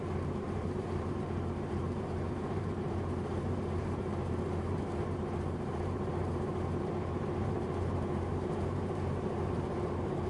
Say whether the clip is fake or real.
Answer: fake